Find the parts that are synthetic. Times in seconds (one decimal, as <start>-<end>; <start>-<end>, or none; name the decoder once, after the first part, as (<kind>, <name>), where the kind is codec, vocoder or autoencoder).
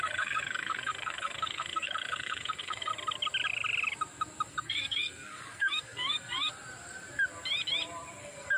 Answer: 0.0-2.9 (codec, SNAC); 4.5-6.5; 8.2-8.6